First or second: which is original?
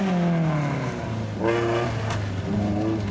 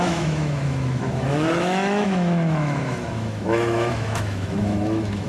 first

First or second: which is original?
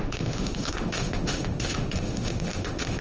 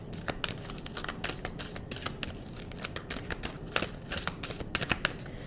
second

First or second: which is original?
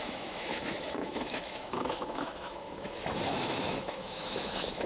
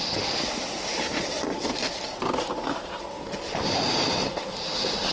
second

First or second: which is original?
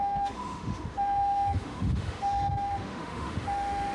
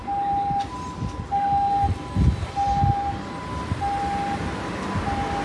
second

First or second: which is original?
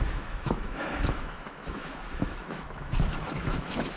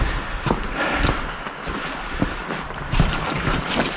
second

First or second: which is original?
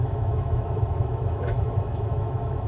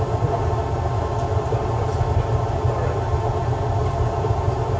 second